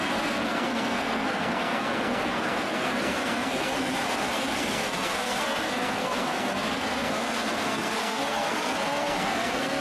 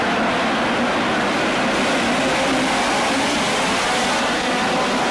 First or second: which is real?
second